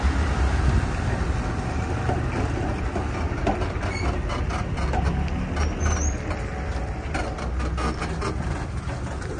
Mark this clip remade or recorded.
recorded